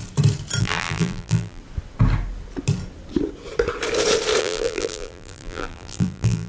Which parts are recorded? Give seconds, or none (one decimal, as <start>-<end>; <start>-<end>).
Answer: 0.0-0.6; 1.6-4.4